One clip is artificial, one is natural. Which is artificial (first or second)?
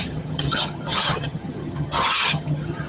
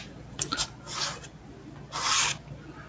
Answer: first